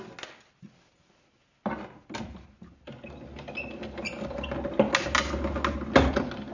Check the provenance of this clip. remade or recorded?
recorded